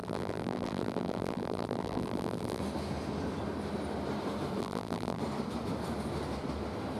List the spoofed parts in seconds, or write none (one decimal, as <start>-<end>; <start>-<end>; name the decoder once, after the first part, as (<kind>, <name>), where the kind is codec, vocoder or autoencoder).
0.0-2.6 (vocoder, BigVGAN v2); 4.6-5.2